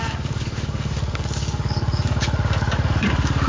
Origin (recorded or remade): remade